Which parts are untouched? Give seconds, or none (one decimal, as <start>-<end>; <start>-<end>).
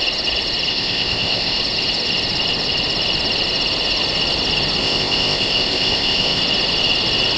0.0-0.7; 1.6-4.8; 6.4-7.4